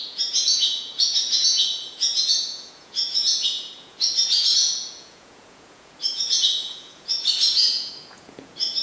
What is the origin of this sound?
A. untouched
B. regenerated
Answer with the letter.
B